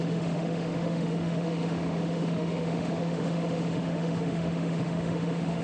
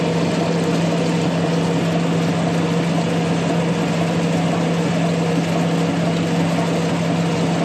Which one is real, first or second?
second